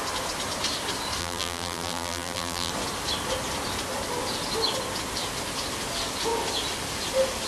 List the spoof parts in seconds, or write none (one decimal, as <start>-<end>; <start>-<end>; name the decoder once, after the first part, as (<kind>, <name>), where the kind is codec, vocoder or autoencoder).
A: 1.2-2.7 (vocoder, BigVGAN v2)